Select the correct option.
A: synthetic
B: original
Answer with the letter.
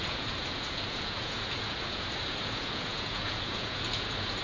A